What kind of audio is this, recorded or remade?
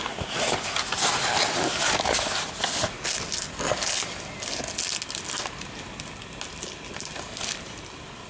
recorded